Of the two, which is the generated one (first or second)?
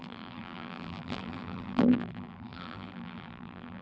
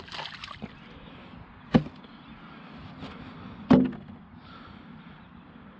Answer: first